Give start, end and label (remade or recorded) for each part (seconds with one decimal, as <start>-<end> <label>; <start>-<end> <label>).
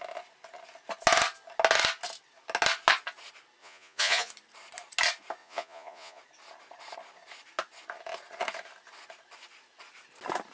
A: 0.0-3.6 recorded; 3.6-4.3 remade; 4.3-5.4 recorded; 5.4-6.2 remade; 6.2-10.5 recorded